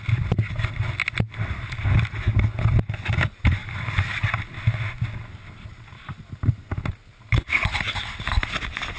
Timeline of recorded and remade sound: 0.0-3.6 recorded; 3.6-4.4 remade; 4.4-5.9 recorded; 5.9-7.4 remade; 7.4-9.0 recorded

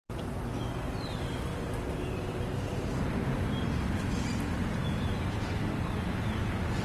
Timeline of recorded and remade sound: 0.0-1.5 recorded; 1.5-3.0 remade; 3.0-6.8 recorded

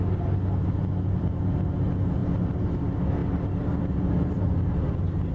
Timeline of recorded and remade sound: 0.0-2.2 recorded; 2.2-2.8 remade; 2.8-3.2 recorded; 3.2-5.3 remade

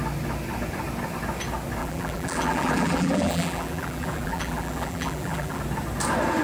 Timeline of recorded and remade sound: 0.0-1.8 recorded; 1.8-5.6 remade; 5.6-6.4 recorded

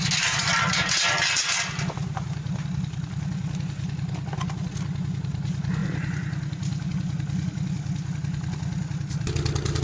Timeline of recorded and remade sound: 0.0-9.8 recorded